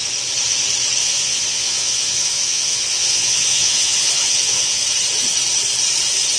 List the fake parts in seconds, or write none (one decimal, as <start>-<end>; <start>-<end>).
1.0-4.8